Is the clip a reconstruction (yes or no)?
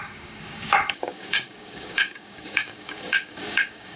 yes